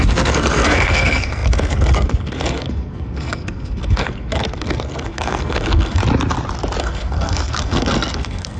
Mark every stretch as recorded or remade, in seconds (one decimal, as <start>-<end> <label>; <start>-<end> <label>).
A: 0.0-6.0 remade; 6.0-6.8 recorded; 6.8-8.6 remade